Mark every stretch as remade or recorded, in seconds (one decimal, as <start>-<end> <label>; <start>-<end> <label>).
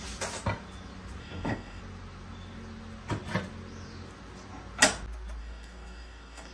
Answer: 0.0-1.2 recorded; 1.2-1.8 remade; 1.8-5.4 recorded; 5.4-6.5 remade